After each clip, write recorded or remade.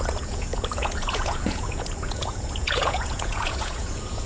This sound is remade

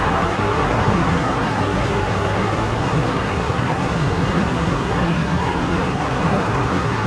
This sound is remade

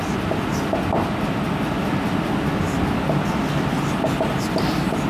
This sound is recorded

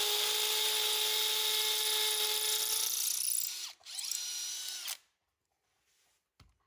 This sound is recorded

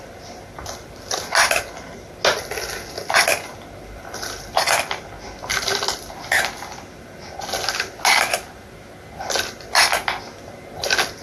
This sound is recorded